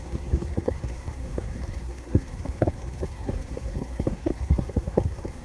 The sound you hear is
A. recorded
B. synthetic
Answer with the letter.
B